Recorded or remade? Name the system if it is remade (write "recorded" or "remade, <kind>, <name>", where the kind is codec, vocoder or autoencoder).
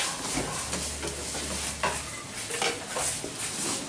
recorded